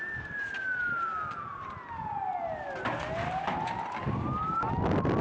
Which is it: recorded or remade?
recorded